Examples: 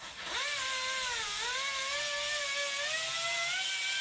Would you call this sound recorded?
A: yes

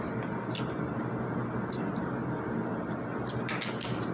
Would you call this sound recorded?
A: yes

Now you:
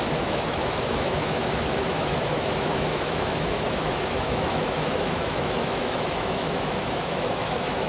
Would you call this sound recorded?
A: no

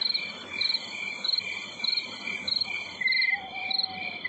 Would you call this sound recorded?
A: yes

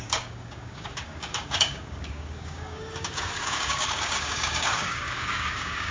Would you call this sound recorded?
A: no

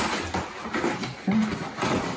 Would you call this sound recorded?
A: yes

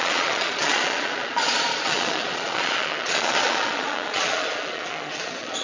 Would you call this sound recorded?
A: no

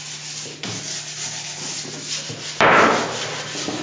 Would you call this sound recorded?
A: yes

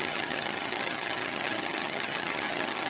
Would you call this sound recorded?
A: no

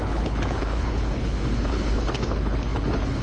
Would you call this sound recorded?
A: no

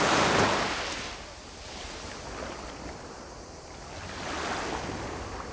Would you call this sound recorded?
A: yes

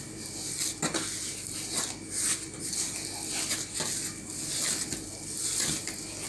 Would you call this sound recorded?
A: yes